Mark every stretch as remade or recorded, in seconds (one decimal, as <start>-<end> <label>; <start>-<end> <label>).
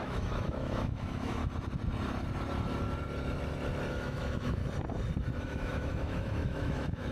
0.0-1.4 remade; 1.4-3.9 recorded; 3.9-4.6 remade; 4.6-5.4 recorded; 5.4-7.1 remade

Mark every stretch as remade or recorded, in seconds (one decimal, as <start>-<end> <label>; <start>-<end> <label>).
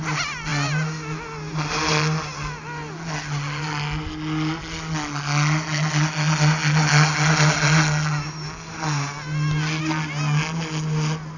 0.0-11.4 recorded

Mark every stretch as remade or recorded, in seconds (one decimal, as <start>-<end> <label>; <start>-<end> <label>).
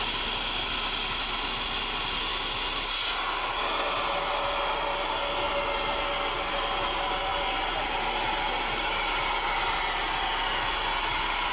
0.0-11.5 recorded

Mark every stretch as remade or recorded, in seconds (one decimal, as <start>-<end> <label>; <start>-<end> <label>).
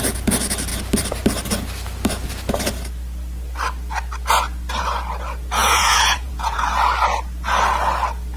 0.0-5.6 recorded; 5.6-6.7 remade; 6.7-8.4 recorded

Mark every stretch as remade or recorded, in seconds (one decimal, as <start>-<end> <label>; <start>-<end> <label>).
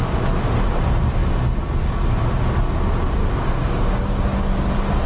0.0-3.2 recorded; 3.2-4.2 remade; 4.2-5.1 recorded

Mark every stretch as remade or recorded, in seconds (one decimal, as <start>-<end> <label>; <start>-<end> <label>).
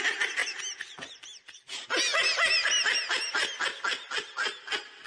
0.0-5.1 recorded